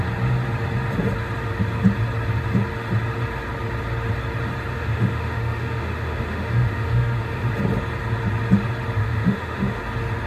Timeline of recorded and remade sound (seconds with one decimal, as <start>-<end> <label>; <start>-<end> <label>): 0.0-4.7 recorded; 4.7-7.5 remade; 7.5-9.0 recorded; 9.0-9.8 remade; 9.8-10.3 recorded